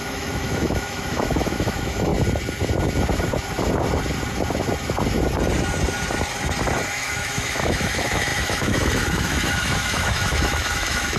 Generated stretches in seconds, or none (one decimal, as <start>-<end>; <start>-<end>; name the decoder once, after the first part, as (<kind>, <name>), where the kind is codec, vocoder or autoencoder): 0.0-2.1 (autoencoder, DAC-VAE); 6.9-11.2